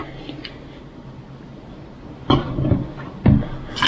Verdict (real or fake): real